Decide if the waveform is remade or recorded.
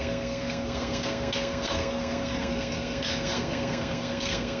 remade